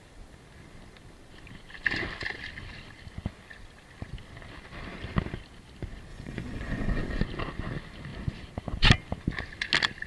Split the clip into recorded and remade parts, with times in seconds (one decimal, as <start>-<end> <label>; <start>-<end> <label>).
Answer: 0.0-6.1 recorded; 6.1-7.2 remade; 7.2-10.1 recorded